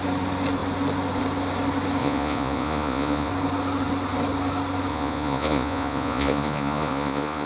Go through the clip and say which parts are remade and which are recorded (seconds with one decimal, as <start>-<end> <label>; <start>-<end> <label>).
0.0-2.0 recorded; 2.0-3.3 remade; 3.3-4.9 recorded; 4.9-7.5 remade